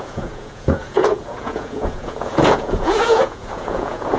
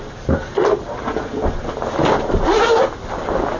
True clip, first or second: second